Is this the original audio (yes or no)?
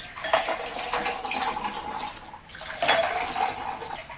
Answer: yes